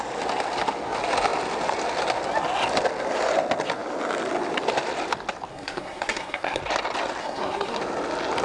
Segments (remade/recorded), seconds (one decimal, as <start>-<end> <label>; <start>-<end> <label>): 0.0-5.5 recorded; 5.5-6.6 remade; 6.6-7.2 recorded; 7.2-7.8 remade; 7.8-8.4 recorded